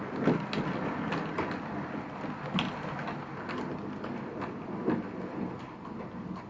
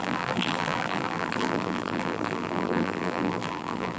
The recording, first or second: first